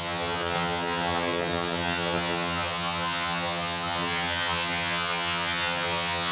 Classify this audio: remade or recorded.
remade